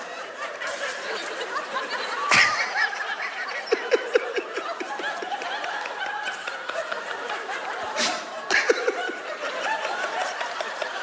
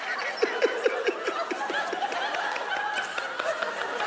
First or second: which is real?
second